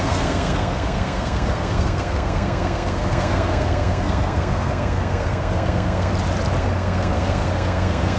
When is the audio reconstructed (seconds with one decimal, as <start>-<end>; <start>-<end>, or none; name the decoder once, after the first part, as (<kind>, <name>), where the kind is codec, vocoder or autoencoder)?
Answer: 0.0-6.1 (codec, SNAC); 6.6-8.2